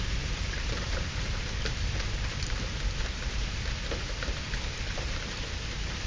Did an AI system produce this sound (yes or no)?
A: yes